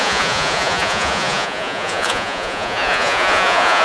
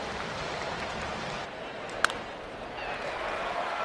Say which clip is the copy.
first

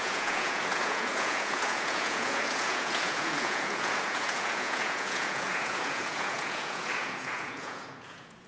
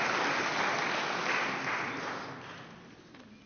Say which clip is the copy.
first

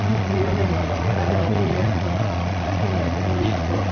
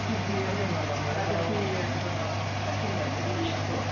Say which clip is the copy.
first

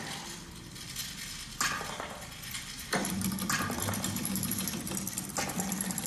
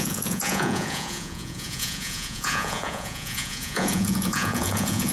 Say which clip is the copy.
second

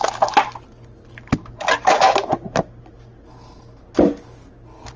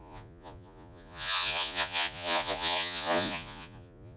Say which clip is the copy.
second